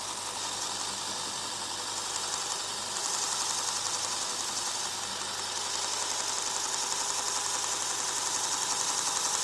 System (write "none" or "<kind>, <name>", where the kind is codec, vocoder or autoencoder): none